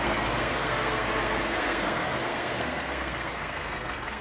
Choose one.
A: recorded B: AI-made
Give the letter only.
B